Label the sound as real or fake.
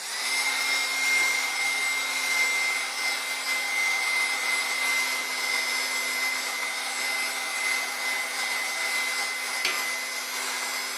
real